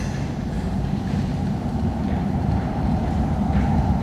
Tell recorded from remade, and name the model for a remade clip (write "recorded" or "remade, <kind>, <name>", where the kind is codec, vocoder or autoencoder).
remade, vocoder, BigVGAN v2